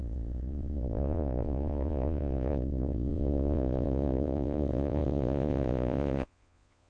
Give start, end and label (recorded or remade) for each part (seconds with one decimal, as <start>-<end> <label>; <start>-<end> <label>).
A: 0.0-6.9 remade